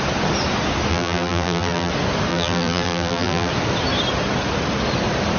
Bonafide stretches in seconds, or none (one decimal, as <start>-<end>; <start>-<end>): 0.0-0.9; 1.9-2.3; 3.5-5.4